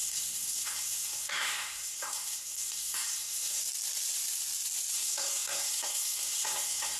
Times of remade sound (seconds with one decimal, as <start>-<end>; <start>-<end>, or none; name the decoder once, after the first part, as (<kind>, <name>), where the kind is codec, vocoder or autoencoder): 0.0-3.6 (codec, SNAC); 4.9-7.0

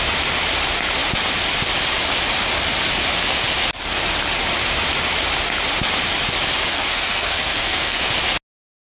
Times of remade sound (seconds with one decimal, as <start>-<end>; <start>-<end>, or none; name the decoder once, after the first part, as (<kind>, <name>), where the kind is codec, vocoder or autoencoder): 6.7-8.0 (codec, SNAC)

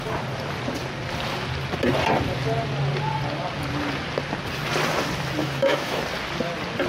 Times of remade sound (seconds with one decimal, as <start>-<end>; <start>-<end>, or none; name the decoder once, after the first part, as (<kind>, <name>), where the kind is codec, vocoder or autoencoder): 5.4-6.0 (autoencoder, DAC-VAE)

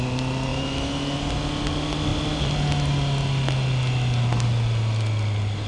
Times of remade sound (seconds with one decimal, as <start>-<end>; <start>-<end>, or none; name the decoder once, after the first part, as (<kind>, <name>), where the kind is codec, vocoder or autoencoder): none

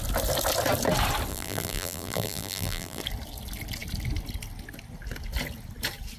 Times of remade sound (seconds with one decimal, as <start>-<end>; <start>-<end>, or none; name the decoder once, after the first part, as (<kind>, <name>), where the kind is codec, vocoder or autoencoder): 1.3-3.0 (vocoder, BigVGAN v2)

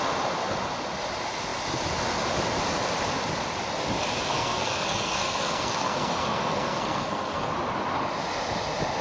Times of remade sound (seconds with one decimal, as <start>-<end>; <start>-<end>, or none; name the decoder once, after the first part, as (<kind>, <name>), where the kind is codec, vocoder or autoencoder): 4.3-7.5 (codec, SNAC)

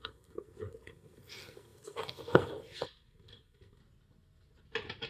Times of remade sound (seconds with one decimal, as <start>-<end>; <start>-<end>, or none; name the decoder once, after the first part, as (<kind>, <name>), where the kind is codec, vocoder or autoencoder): 0.0-3.8 (codec, SNAC)